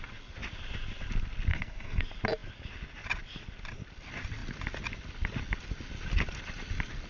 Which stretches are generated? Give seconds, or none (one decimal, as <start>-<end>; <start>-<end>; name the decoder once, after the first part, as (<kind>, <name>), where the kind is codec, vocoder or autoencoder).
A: 1.5-2.0 (codec, SNAC)